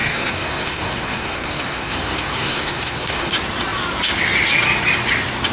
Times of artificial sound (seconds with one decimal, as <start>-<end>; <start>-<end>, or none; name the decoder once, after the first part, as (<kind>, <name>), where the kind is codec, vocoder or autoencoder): 0.0-3.3 (codec, SNAC)